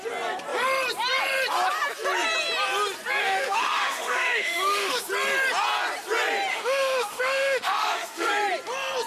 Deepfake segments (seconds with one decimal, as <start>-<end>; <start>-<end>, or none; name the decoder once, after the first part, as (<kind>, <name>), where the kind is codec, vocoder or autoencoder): 3.2-5.1 (autoencoder, DAC-VAE); 6.5-8.3